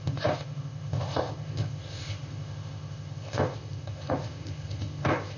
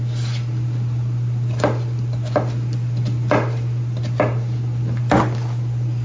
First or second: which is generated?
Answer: first